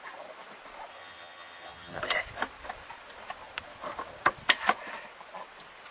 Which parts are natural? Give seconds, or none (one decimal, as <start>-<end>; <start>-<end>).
0.0-0.9; 2.0-5.9